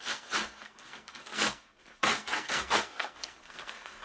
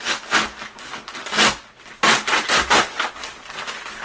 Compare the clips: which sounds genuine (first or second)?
second